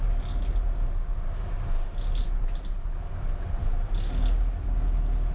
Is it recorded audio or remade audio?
recorded